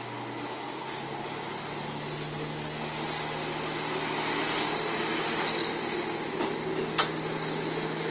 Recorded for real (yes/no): yes